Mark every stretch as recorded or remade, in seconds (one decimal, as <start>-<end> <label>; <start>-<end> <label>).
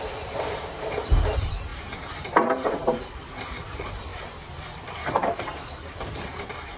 0.0-6.8 remade